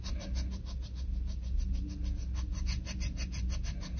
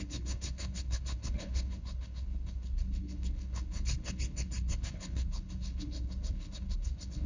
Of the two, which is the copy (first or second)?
second